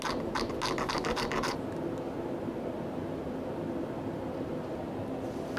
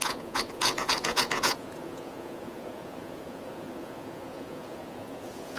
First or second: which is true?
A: first